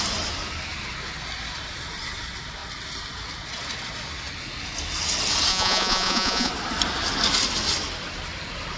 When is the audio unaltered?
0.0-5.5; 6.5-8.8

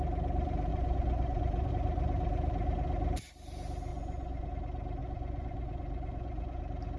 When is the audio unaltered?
0.0-0.7; 1.7-3.9; 4.5-5.0; 6.6-7.0

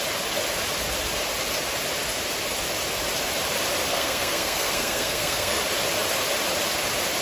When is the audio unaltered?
0.0-3.9; 5.6-7.2

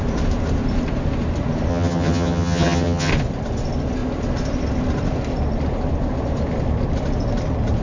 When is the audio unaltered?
0.0-1.7; 3.1-7.8

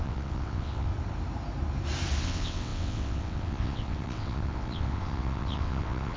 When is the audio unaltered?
0.9-2.2

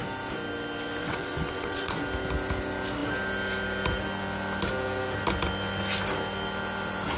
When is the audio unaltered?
0.0-1.0; 1.9-7.2